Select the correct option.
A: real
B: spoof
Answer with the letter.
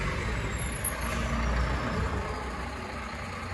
A